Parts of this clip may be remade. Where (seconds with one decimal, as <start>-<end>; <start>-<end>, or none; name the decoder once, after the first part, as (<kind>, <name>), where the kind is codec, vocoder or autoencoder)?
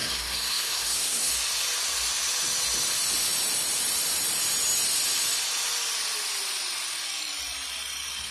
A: 0.0-1.3 (codec, SNAC)